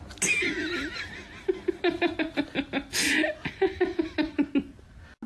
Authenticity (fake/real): real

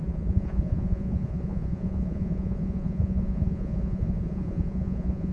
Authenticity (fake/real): fake